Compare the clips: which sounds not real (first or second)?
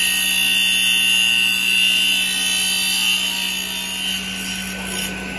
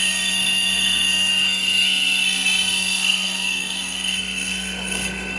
second